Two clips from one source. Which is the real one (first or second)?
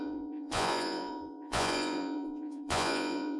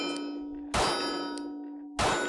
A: second